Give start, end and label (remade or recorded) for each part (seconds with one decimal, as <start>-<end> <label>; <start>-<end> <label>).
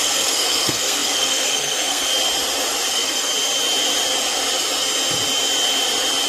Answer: 0.0-2.1 remade; 2.1-2.9 recorded; 2.9-3.3 remade; 3.3-6.3 recorded